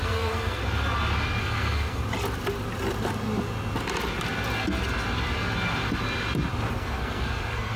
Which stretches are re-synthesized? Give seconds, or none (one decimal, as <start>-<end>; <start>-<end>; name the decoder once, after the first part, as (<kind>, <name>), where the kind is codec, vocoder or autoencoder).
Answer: 0.0-0.6 (codec, SNAC); 1.4-2.0; 6.7-7.8

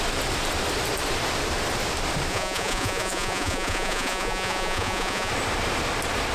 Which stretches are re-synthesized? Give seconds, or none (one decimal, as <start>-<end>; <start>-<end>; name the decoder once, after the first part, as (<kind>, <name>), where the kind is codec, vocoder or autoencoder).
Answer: 2.3-5.3 (vocoder, Vocos)

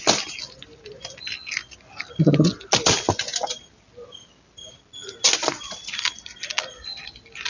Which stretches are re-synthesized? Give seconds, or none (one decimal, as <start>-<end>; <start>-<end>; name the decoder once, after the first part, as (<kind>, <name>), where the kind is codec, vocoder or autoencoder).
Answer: none

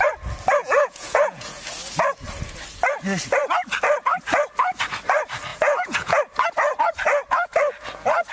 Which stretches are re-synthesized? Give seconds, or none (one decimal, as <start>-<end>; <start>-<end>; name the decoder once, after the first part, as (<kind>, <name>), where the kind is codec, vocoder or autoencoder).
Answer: 0.6-1.6 (vocoder, Vocos); 5.5-6.2

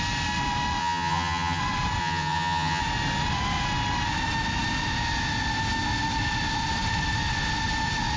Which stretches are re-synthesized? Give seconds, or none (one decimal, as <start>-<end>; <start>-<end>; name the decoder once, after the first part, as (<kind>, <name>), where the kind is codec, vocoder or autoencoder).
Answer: 0.8-1.6 (vocoder, HiFi-GAN); 2.0-2.8